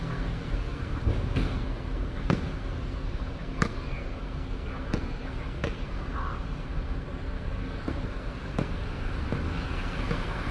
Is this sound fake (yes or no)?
yes